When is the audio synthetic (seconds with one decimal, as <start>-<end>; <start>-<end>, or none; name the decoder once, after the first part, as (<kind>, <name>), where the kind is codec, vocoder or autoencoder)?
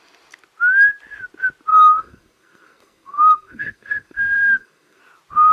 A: 1.7-5.0 (codec, SNAC)